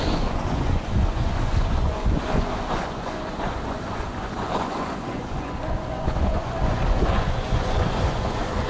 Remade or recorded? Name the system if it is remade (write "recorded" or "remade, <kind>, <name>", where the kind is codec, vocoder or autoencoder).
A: remade, vocoder, Vocos